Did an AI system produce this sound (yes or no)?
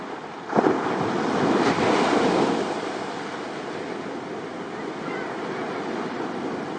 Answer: no